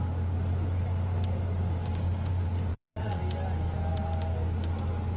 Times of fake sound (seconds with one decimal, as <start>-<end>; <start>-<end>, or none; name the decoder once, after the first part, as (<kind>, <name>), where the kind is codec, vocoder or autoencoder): 2.7-3.2 (vocoder, Vocos)